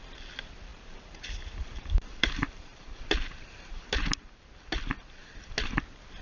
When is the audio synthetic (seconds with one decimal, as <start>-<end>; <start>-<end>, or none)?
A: 0.7-4.4; 5.2-5.8